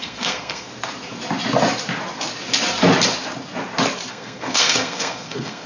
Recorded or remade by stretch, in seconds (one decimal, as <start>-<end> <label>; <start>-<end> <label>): 0.0-0.7 remade; 0.7-4.1 recorded; 4.1-5.7 remade